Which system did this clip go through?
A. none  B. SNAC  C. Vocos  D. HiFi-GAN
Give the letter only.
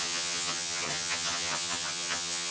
D